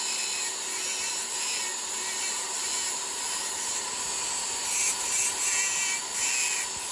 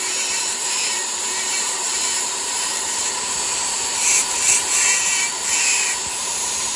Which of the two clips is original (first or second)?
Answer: first